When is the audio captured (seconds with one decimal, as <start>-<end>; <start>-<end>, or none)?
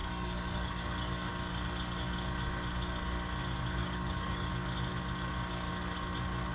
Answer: 1.3-3.8; 4.5-6.5